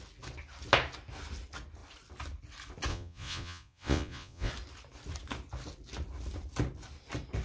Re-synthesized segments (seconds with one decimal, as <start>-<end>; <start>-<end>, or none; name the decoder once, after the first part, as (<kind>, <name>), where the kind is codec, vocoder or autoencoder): 2.9-4.5 (vocoder, Vocos)

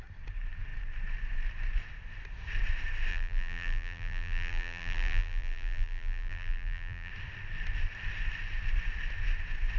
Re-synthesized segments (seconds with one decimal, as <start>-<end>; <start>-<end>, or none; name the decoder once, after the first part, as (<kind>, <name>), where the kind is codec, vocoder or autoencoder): 3.1-7.1 (vocoder, BigVGAN v2)

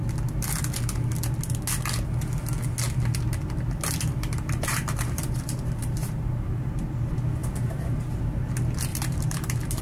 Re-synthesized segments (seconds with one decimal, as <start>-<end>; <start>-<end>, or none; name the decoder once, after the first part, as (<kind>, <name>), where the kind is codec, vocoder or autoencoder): 4.1-6.7 (vocoder, BigVGAN v2); 7.4-8.2; 8.9-9.8

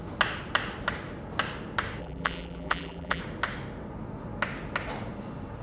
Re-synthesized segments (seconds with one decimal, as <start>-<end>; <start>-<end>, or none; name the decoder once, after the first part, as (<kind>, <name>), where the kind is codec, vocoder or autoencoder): 2.0-3.2 (vocoder, BigVGAN v2)

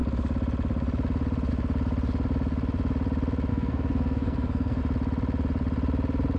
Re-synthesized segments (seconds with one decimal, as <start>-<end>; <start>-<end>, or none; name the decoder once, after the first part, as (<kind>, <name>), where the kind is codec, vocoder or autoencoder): 3.5-4.8 (codec, SNAC)